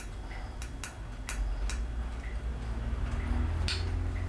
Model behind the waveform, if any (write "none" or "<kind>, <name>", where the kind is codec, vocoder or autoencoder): none